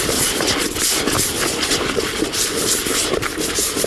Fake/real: real